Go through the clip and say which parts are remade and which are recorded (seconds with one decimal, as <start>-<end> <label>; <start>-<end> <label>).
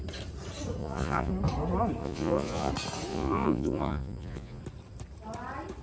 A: 0.0-0.8 recorded; 0.8-1.3 remade; 1.3-2.0 recorded; 2.0-2.7 remade; 2.7-3.1 recorded; 3.1-4.6 remade; 4.6-5.8 recorded